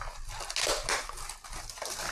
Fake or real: real